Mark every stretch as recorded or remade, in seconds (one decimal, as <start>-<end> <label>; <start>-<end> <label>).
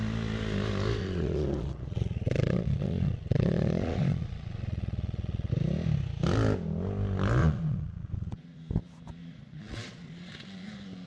0.0-1.0 recorded; 1.0-5.5 remade; 5.5-7.4 recorded; 7.4-8.6 remade; 8.6-9.2 recorded; 9.2-10.3 remade; 10.3-11.1 recorded